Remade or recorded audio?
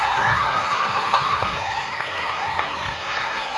remade